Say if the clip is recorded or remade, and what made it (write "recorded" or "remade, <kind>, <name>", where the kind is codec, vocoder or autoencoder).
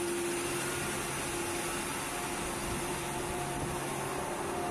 recorded